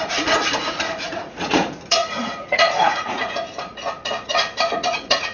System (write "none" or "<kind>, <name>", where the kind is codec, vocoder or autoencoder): vocoder, Vocos